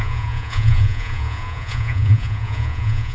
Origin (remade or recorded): remade